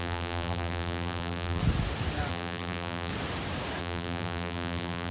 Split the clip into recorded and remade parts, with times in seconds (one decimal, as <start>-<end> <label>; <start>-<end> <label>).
0.0-1.6 remade; 1.6-2.3 recorded; 2.3-3.1 remade; 3.1-3.8 recorded; 3.8-5.1 remade